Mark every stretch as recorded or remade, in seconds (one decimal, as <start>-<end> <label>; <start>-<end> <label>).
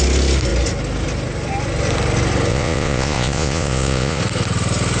0.0-2.5 recorded; 2.5-4.2 remade; 4.2-5.0 recorded